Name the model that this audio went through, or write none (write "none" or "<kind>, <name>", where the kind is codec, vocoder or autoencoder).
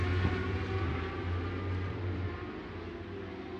none